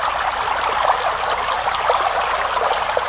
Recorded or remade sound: recorded